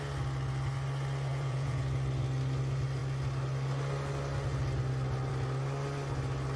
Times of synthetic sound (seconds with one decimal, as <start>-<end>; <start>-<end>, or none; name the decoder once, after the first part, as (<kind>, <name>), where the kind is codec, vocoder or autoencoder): 1.3-1.8 (vocoder, Vocos)